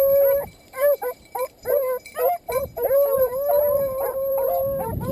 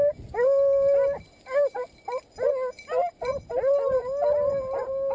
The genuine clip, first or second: second